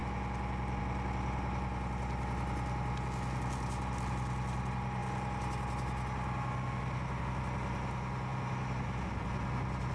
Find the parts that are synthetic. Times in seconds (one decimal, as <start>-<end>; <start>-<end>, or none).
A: none